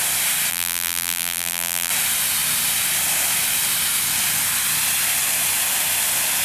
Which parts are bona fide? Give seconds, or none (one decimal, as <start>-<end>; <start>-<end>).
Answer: 0.0-0.5; 1.9-6.4